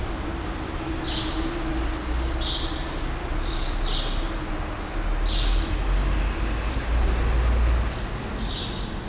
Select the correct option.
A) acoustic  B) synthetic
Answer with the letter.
A